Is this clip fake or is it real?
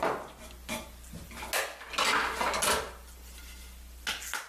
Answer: real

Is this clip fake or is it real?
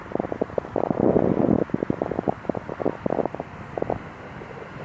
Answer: real